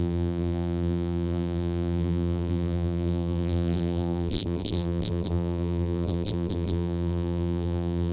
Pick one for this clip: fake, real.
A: fake